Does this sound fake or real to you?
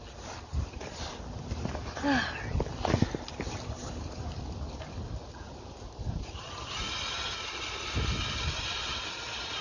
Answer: real